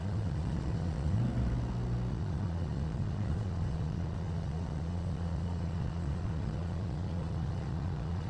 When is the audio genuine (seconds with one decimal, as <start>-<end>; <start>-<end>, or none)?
1.2-2.1